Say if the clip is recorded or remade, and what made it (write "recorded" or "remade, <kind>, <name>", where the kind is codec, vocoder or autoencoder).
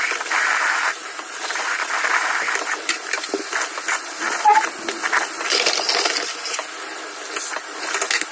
recorded